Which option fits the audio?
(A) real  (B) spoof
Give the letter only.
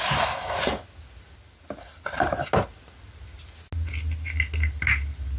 A